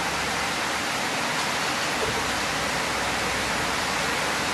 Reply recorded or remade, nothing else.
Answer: recorded